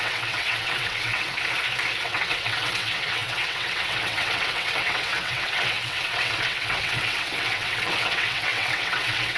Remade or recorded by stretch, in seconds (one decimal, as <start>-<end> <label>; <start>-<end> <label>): 0.0-1.3 remade; 1.3-2.0 recorded; 2.0-9.4 remade